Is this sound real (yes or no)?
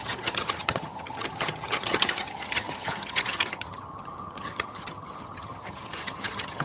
no